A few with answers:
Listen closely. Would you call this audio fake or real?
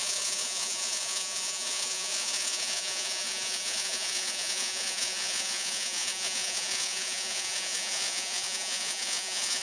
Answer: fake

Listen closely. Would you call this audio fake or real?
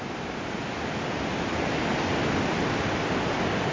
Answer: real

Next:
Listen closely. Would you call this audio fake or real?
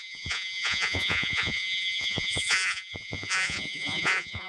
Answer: fake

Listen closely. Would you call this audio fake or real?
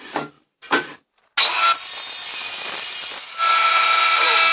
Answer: real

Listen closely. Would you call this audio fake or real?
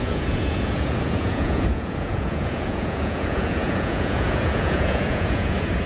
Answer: fake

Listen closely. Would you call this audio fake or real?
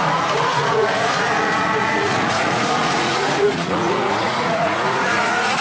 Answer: fake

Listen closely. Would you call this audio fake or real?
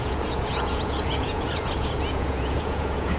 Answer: fake